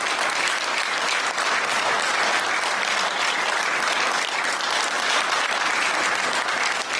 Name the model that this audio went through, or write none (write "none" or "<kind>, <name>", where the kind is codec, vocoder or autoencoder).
none